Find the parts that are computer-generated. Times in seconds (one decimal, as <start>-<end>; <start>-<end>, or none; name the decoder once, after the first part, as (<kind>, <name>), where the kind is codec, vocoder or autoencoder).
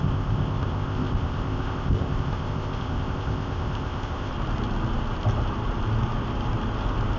0.0-4.3 (codec, ZipCodec)